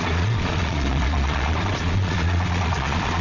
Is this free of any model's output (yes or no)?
no